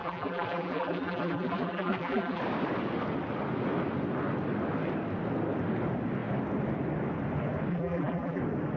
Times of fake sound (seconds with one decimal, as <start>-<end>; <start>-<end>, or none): 0.0-2.4; 7.7-8.4